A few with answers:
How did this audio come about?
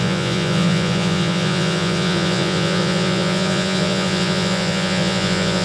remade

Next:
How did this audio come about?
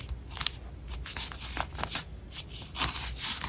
recorded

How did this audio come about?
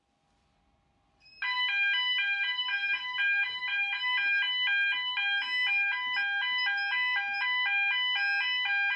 recorded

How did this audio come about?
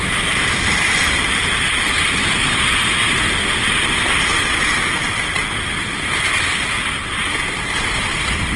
recorded